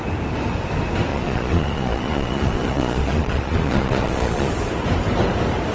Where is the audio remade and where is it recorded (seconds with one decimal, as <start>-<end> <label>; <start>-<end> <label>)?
0.0-1.1 recorded; 1.1-4.5 remade; 4.5-5.7 recorded